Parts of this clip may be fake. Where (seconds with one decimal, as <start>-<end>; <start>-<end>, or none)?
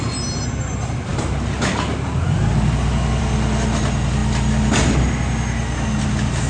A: none